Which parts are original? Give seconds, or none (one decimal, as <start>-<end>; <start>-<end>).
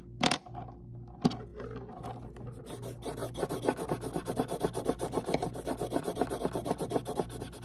0.0-7.6